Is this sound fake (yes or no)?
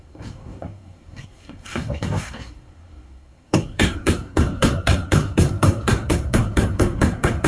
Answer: yes